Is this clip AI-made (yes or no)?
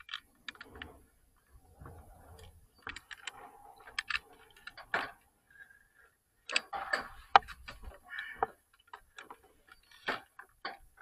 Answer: no